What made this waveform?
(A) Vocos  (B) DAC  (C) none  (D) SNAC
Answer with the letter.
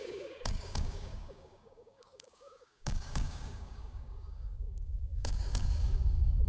B